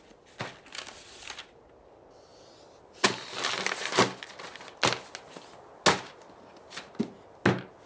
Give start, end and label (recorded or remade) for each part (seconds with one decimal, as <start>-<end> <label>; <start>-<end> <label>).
0.0-7.9 recorded